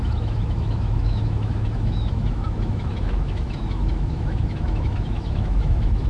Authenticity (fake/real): fake